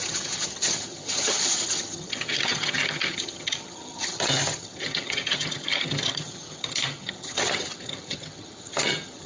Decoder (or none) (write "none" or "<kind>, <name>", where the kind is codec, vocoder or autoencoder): vocoder, HiFi-GAN